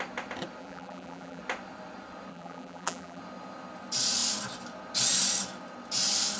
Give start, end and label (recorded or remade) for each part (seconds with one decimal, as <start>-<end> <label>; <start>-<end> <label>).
0.0-0.6 recorded; 0.6-1.4 remade; 1.4-2.3 recorded; 2.3-3.2 remade; 3.2-6.4 recorded